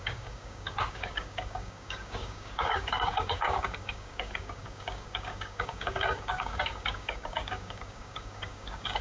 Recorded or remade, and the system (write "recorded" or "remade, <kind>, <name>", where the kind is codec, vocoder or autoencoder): remade, codec, DAC